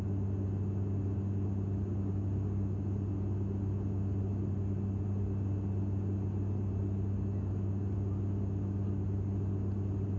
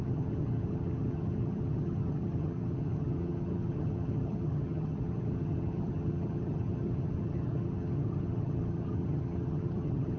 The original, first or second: first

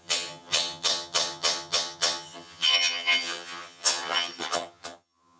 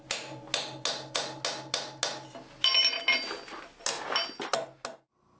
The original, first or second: second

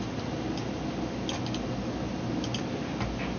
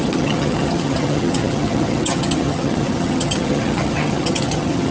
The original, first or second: first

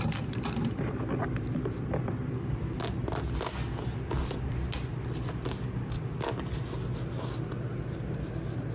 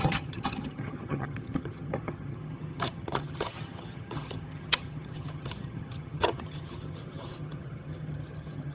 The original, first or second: first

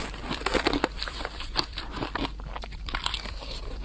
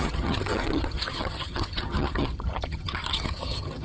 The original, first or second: first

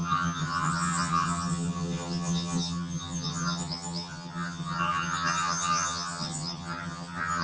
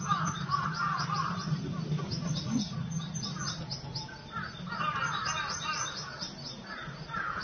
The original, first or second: second